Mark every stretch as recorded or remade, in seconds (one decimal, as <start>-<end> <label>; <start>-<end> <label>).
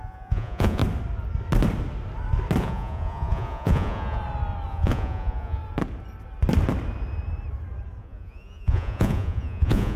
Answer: 0.0-0.8 remade; 0.8-2.6 recorded; 2.6-4.2 remade; 4.2-4.7 recorded; 4.7-5.6 remade; 5.6-8.0 recorded; 8.0-10.0 remade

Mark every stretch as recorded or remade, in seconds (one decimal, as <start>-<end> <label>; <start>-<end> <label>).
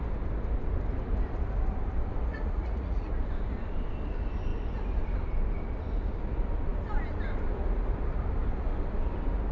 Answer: 0.0-2.3 recorded; 2.3-3.1 remade; 3.1-9.5 recorded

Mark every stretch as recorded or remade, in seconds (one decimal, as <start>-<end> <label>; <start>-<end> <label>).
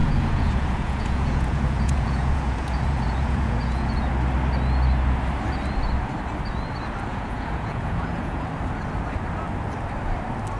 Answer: 0.0-4.1 remade; 4.1-7.1 recorded; 7.1-8.5 remade; 8.5-10.6 recorded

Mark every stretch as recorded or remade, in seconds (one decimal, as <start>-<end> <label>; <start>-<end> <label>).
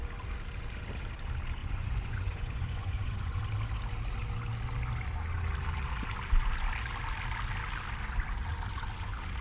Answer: 0.0-1.6 recorded; 1.6-3.4 remade; 3.4-9.4 recorded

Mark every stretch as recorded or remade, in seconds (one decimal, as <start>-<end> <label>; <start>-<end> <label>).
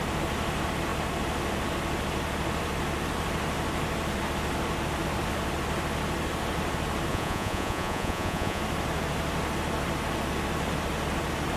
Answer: 0.0-7.1 recorded; 7.1-8.6 remade; 8.6-11.6 recorded